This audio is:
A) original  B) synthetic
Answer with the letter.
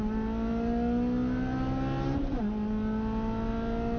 A